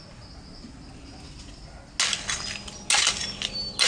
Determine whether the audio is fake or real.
real